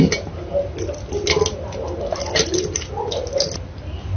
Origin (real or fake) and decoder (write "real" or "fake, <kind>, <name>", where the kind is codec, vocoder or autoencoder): real